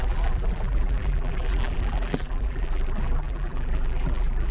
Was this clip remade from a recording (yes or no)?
yes